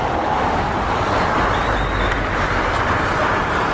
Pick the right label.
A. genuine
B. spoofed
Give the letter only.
A